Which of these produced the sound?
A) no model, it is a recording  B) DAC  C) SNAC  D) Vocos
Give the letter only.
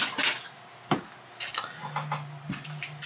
A